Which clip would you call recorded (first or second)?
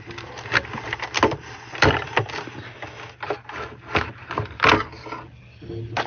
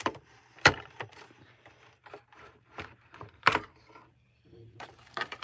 first